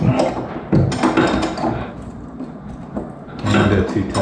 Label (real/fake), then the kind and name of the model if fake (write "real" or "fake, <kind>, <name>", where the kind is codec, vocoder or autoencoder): real